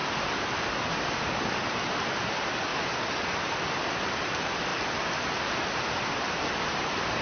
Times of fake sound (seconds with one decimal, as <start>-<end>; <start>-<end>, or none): 1.0-2.7; 3.9-4.7; 5.7-7.2